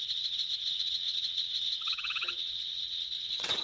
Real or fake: fake